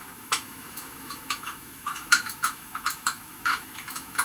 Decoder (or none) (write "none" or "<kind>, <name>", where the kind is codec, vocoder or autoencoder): autoencoder, DAC-VAE